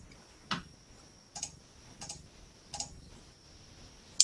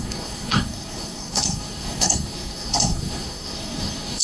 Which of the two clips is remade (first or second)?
second